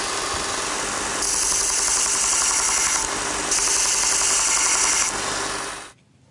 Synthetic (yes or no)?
no